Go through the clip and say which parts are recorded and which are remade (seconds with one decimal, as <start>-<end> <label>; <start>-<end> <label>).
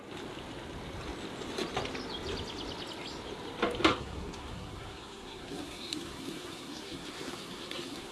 0.0-3.9 recorded; 3.9-8.1 remade